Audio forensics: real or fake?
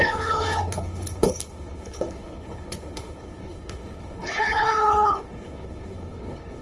fake